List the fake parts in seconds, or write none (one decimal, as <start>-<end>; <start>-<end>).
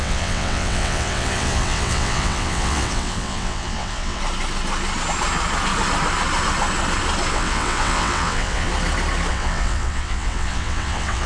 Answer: 0.0-4.2; 7.3-8.7; 9.3-11.3